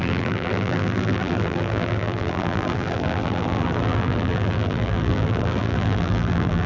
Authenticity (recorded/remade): remade